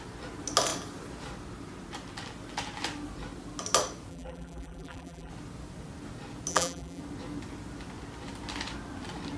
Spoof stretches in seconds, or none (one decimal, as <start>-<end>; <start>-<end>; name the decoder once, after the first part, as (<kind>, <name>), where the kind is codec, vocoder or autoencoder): 4.1-5.3 (vocoder, BigVGAN v2); 6.5-7.0